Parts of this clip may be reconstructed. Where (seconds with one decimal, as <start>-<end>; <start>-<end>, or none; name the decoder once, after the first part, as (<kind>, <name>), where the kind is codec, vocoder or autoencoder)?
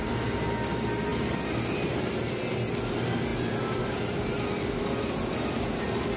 none